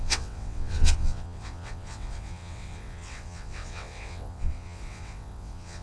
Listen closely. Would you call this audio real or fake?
fake